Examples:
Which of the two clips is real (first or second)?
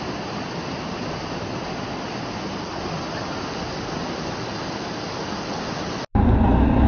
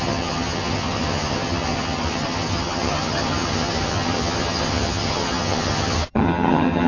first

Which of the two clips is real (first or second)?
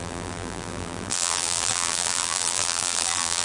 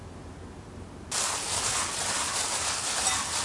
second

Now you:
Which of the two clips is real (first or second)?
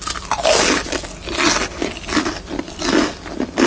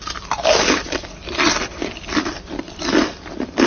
first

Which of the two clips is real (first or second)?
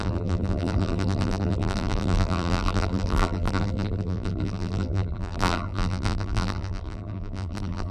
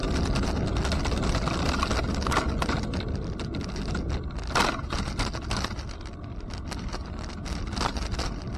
second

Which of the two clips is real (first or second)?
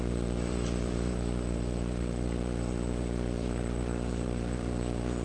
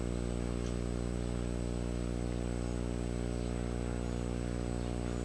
second